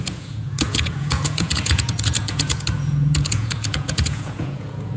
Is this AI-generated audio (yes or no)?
yes